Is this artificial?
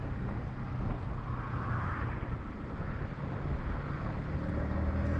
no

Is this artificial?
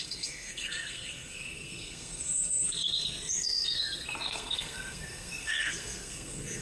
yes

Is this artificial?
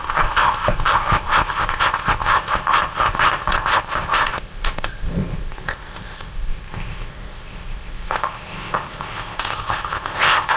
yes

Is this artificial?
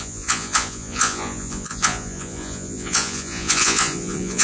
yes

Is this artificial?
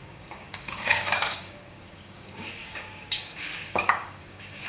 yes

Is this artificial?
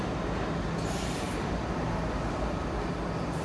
no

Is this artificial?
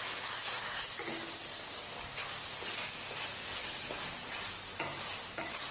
no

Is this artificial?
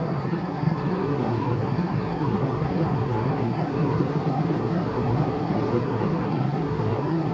yes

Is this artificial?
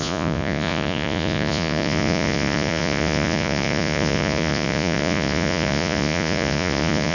yes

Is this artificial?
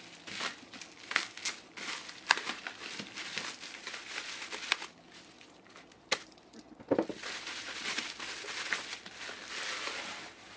no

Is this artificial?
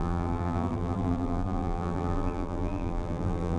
yes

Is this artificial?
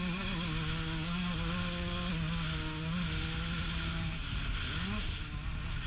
no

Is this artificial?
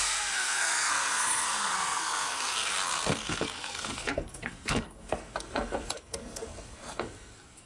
yes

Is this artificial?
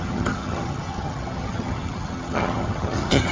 yes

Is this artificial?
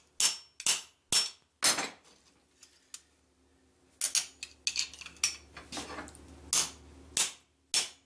no